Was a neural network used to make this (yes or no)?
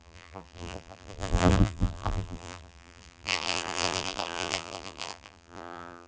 yes